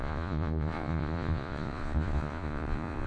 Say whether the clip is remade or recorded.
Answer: remade